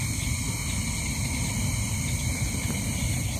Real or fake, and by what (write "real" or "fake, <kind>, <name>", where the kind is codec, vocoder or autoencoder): real